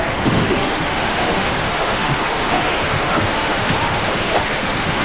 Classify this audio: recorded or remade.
remade